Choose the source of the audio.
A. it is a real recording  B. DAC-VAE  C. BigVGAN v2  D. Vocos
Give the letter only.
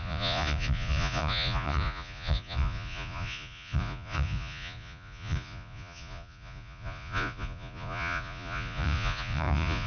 D